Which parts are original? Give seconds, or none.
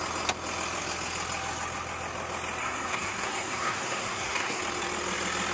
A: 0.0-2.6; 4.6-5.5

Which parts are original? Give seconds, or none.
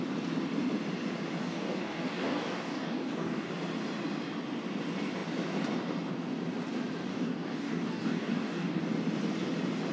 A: 0.0-1.4; 3.5-7.1; 8.8-9.9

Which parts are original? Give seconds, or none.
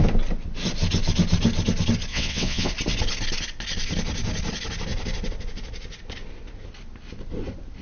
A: 0.0-2.1; 2.7-7.8